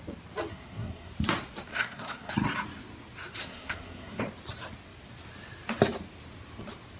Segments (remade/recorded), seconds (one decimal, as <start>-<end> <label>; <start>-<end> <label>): 0.0-0.5 recorded; 0.5-1.1 remade; 1.1-1.7 recorded; 1.7-2.3 remade; 2.3-3.4 recorded; 3.4-4.2 remade; 4.2-7.0 recorded